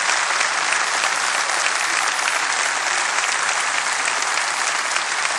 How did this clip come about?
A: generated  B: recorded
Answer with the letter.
B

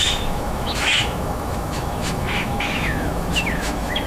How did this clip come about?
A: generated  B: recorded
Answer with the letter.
A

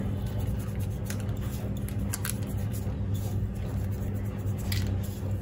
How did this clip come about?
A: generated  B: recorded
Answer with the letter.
B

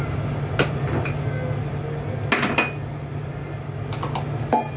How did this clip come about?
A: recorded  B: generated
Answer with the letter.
A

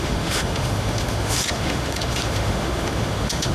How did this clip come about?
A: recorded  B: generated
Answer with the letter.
B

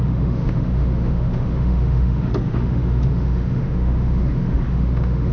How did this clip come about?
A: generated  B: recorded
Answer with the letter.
A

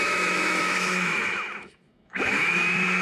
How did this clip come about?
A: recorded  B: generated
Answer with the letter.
B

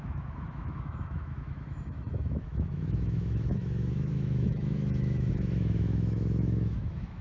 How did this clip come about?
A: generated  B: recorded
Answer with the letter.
A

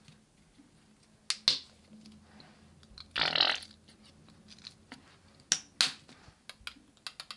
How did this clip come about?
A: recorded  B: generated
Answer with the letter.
A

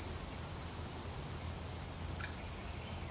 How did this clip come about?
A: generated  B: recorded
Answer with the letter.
B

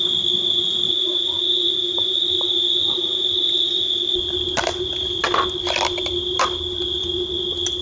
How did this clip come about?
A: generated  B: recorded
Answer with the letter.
B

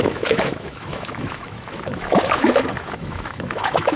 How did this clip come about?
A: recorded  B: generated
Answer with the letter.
B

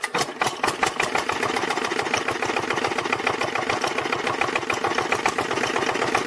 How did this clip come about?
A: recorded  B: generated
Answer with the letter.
A